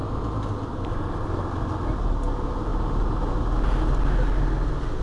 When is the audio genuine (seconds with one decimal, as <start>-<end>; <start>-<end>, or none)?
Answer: 0.0-5.0